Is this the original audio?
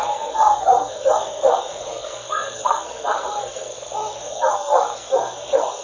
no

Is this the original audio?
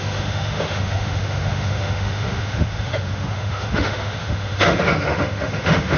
no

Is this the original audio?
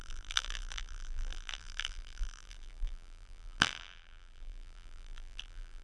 no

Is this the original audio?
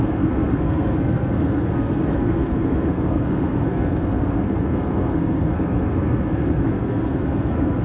no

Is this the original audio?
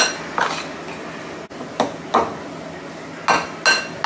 yes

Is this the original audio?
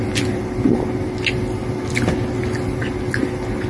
yes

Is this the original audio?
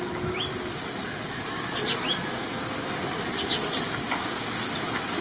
yes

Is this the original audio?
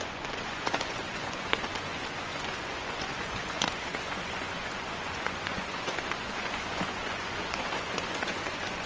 no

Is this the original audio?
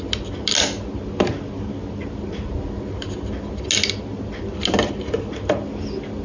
yes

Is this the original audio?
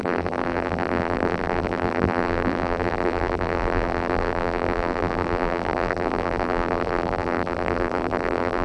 no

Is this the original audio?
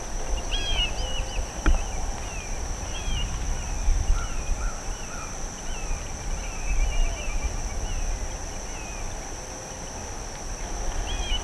yes